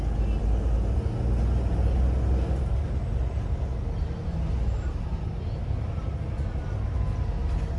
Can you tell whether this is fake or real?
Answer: real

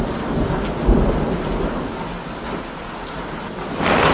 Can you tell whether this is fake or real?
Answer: real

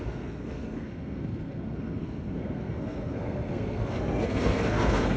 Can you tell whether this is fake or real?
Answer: fake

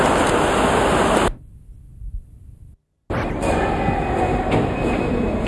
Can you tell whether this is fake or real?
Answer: real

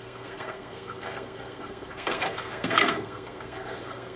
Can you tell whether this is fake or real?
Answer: fake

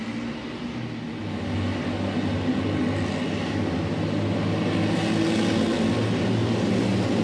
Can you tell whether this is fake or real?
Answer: real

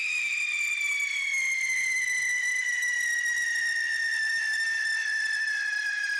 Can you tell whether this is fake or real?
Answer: real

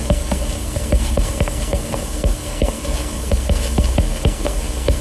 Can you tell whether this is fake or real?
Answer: fake